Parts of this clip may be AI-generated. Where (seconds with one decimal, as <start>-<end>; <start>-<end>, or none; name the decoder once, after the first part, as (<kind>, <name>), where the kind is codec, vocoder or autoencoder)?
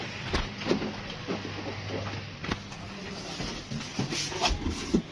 none